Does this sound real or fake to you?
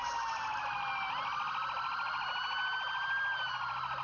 real